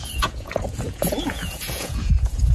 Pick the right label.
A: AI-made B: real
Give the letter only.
A